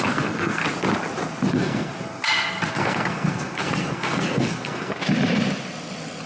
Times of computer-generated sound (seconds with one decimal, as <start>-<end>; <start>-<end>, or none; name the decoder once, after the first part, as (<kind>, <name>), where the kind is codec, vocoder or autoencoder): 0.0-0.6 (codec, SNAC); 1.5-1.9; 2.7-5.0